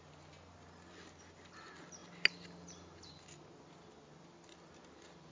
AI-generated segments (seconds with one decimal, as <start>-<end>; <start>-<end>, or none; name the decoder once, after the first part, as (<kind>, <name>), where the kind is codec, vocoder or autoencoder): none